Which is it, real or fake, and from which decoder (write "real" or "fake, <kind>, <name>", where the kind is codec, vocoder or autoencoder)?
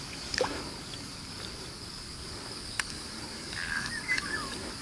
fake, codec, DAC